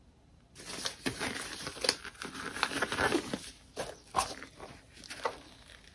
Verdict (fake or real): real